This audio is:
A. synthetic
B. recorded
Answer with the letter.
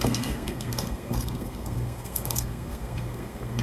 A